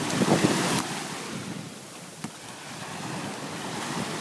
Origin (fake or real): real